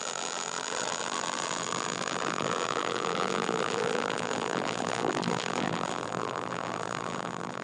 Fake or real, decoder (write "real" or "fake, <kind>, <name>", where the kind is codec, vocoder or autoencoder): fake, vocoder, BigVGAN v2